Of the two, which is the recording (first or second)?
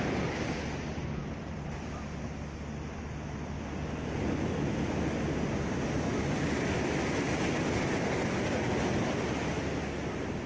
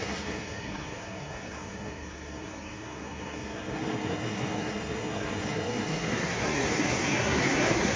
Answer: first